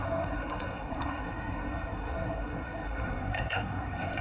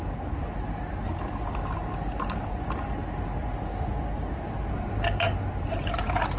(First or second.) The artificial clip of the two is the first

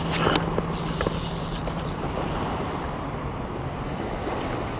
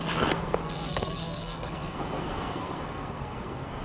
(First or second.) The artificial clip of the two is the second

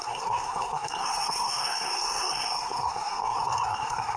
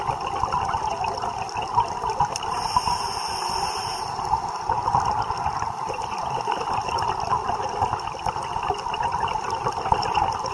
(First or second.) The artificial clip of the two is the first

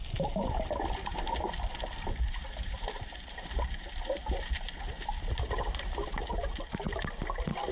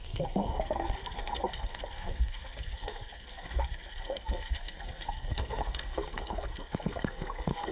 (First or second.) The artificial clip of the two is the second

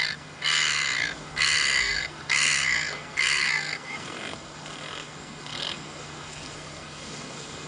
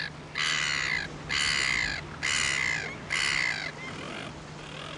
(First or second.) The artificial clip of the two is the first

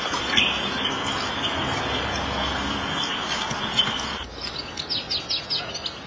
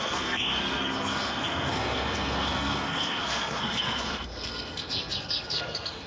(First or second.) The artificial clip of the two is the second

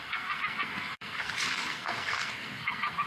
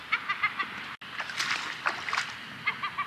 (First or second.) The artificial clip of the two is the first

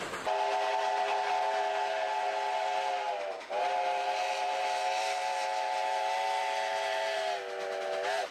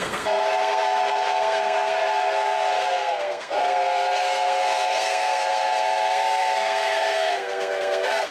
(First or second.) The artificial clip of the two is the second